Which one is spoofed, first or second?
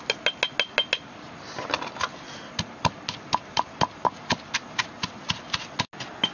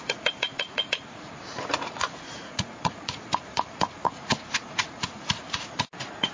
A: second